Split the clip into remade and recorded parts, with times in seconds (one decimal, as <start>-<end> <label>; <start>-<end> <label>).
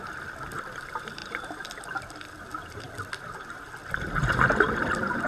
0.0-1.2 remade; 1.2-2.3 recorded; 2.3-3.8 remade; 3.8-4.3 recorded; 4.3-5.3 remade